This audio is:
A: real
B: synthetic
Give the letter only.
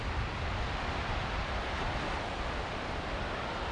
A